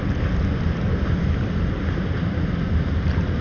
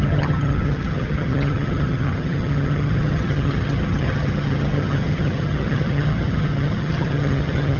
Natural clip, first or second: first